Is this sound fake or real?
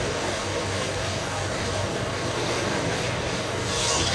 fake